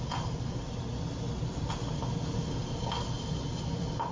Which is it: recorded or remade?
recorded